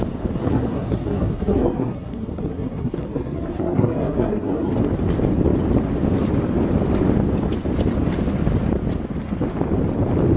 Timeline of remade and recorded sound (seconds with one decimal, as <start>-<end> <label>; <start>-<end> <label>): 0.0-0.4 recorded; 0.4-4.7 remade; 4.7-10.4 recorded